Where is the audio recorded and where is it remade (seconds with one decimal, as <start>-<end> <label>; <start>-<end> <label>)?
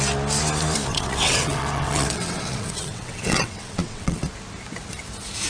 0.0-0.9 recorded; 0.9-4.2 remade; 4.2-5.5 recorded